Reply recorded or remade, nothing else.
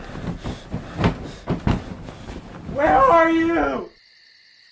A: recorded